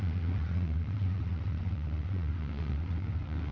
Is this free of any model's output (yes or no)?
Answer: no